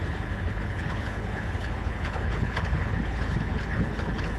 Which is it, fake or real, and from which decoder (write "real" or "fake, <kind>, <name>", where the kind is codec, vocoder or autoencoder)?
fake, codec, HILCodec